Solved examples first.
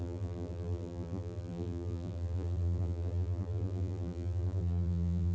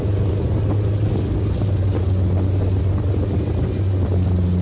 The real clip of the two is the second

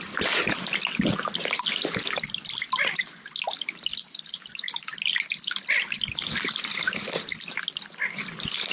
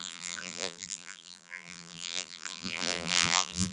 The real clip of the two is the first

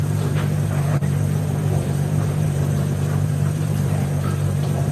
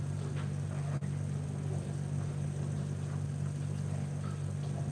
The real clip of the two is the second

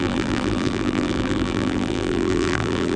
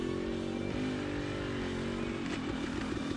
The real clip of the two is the second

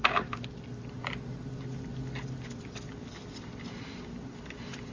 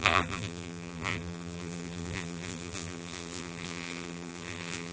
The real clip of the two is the first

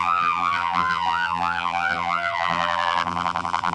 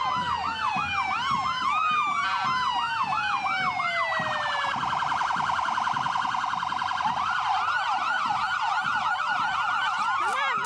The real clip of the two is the second